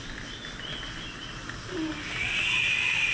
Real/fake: real